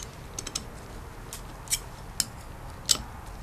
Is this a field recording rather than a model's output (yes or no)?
yes